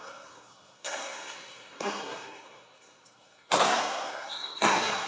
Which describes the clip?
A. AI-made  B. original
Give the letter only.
A